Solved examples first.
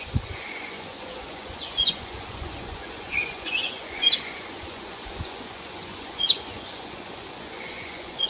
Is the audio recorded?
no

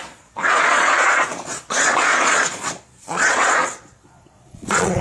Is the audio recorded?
no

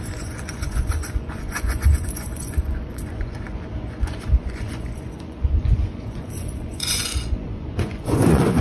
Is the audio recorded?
no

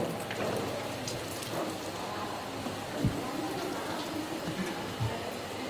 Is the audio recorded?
yes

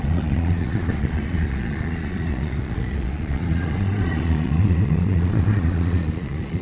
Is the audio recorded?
no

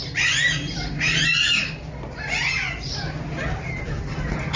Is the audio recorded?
yes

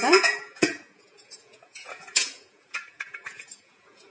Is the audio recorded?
no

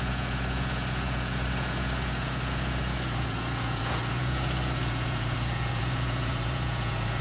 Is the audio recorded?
no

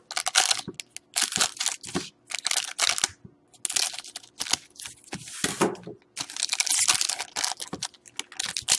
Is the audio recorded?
yes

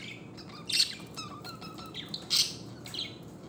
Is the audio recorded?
yes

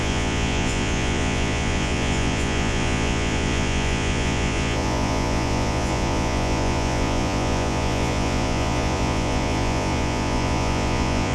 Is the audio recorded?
no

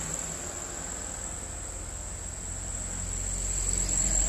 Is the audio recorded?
yes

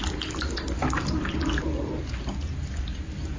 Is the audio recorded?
yes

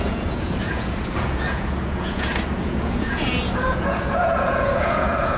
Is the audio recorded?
no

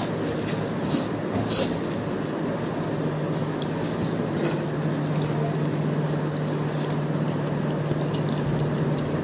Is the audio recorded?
yes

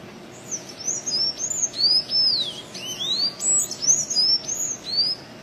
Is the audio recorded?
yes